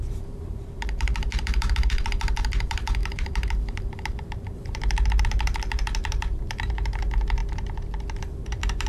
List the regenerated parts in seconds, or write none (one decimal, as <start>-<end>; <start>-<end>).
0.0-7.4; 8.2-8.9